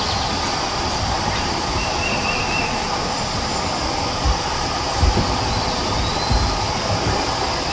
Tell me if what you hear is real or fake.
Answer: real